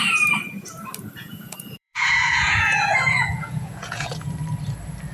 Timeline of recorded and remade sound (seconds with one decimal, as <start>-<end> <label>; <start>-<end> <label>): 0.0-1.2 recorded; 1.2-4.3 remade; 4.3-5.1 recorded